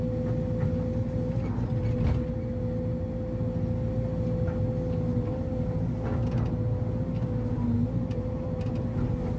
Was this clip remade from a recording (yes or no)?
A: no